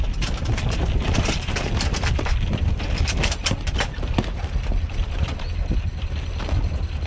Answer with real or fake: real